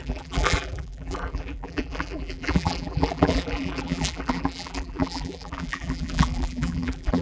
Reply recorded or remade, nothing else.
remade